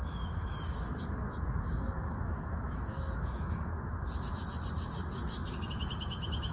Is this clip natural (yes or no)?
no